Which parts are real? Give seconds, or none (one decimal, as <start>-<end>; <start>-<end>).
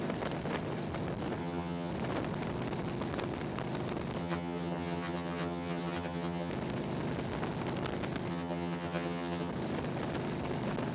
0.0-1.4; 1.9-4.2; 6.5-8.3; 9.5-10.9